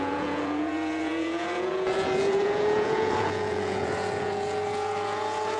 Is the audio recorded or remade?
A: remade